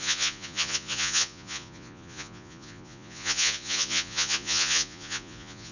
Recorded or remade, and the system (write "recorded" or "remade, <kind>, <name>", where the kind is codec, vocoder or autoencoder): remade, vocoder, Vocos